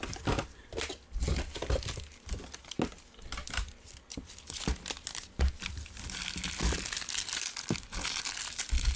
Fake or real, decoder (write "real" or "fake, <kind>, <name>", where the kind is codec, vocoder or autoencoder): real